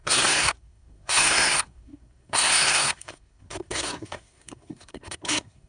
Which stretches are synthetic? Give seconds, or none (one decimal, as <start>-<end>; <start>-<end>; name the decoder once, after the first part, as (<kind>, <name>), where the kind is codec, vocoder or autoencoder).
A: 0.0-5.7 (codec, SNAC)